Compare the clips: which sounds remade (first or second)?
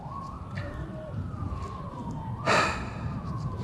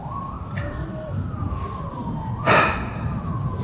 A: first